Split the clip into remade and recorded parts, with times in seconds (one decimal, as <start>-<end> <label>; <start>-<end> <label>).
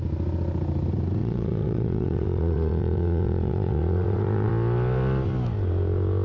0.0-1.2 recorded; 1.2-4.5 remade; 4.5-6.2 recorded